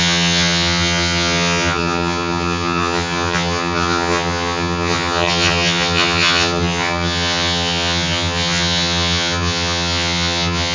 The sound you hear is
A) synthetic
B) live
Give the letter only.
A